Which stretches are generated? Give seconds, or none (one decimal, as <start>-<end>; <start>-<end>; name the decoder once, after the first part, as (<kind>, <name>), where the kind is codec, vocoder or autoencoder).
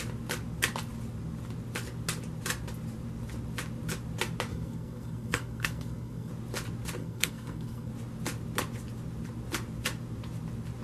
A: 4.5-6.3 (codec, SNAC); 7.0-7.9